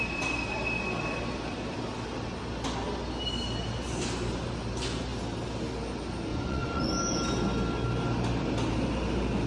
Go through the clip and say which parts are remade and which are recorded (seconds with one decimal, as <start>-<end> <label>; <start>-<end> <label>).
0.0-6.3 recorded; 6.3-6.8 remade; 6.8-9.5 recorded